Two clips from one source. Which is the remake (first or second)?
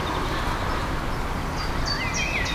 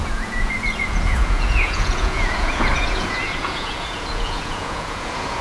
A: second